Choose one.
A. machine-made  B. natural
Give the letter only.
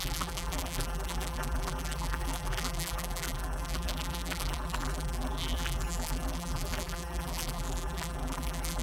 A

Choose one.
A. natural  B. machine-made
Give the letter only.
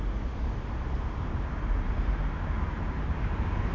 A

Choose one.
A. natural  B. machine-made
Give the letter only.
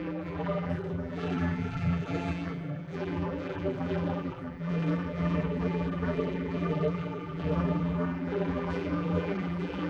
B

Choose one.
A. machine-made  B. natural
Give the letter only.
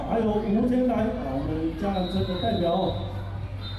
B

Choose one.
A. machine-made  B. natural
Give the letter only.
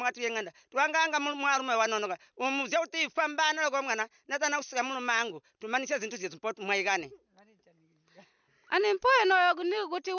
B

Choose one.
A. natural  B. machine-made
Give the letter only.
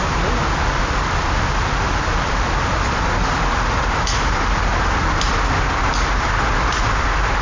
B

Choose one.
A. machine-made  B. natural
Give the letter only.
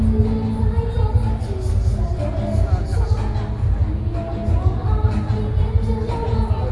B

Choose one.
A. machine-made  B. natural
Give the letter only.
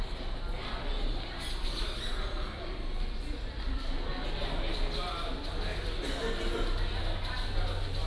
B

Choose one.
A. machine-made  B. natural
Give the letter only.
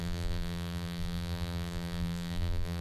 A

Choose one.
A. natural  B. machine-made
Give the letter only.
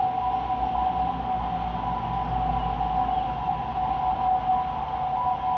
A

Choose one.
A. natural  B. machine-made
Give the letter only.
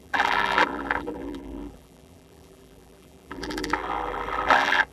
B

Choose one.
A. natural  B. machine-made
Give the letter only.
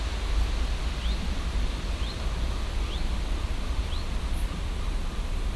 A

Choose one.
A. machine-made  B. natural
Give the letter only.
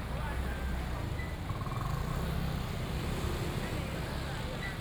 B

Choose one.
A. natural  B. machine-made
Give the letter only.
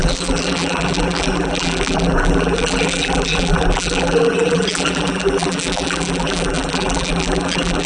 B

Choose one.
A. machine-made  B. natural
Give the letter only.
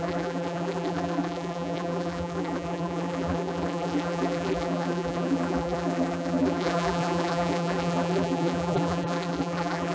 A